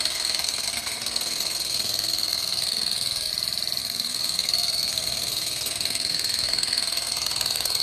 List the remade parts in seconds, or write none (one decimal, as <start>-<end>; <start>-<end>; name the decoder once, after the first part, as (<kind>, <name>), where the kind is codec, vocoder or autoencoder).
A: 0.0-3.3 (codec, SNAC); 3.8-7.8